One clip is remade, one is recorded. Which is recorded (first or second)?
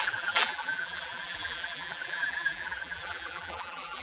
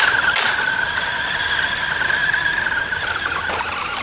second